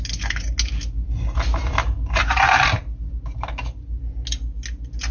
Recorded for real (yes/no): yes